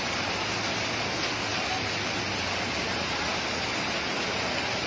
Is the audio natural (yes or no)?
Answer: yes